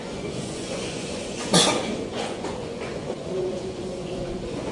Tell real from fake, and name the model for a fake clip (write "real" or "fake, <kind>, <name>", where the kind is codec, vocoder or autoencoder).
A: fake, vocoder, Vocos